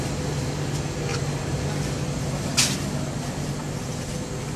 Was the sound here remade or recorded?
recorded